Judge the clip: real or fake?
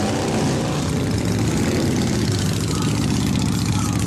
real